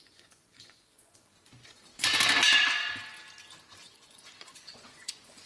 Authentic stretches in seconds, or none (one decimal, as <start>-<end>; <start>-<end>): 2.1-3.7